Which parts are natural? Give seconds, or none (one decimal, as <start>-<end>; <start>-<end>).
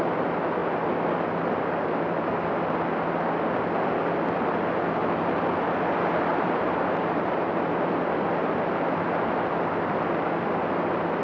0.0-6.3; 7.7-11.2